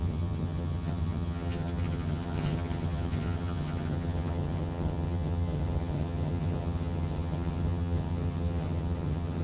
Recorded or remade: remade